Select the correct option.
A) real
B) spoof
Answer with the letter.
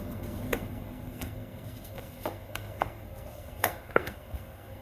B